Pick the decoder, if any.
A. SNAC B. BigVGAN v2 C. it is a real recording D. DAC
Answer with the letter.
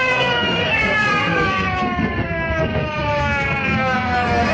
A